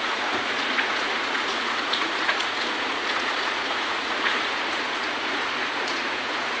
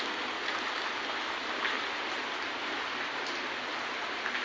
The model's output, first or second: first